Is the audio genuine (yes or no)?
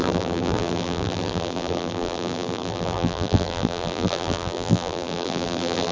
no